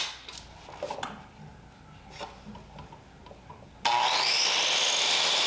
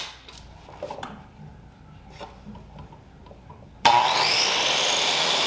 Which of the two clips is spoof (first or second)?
second